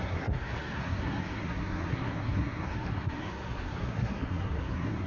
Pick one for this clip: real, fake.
fake